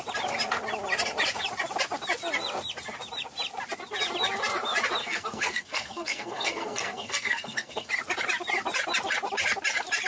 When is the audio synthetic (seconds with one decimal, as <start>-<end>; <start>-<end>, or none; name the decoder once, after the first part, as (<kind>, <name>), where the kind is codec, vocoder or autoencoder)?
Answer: 5.0-7.9 (codec, SNAC)